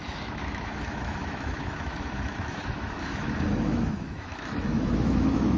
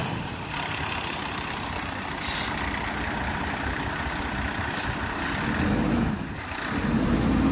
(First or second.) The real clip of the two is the second